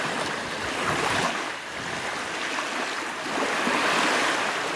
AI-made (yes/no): no